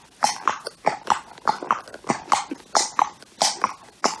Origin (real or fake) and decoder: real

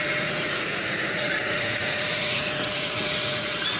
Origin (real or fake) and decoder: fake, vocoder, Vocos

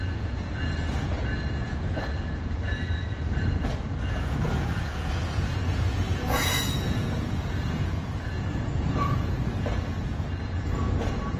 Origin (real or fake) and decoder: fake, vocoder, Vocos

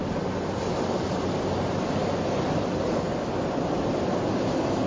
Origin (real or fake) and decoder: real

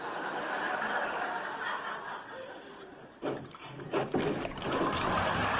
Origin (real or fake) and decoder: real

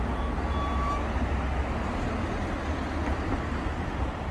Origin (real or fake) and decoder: real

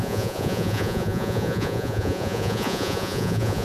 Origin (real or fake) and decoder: fake, vocoder, Vocos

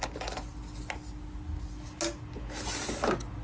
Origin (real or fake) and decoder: real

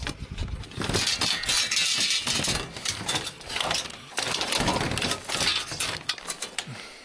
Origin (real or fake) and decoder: real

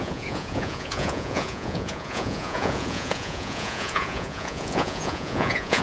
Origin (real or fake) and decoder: fake, vocoder, Vocos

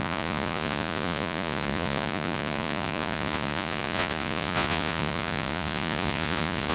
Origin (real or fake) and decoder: fake, vocoder, Vocos